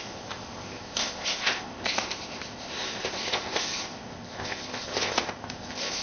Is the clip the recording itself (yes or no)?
no